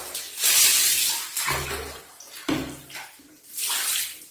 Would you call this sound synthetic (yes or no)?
no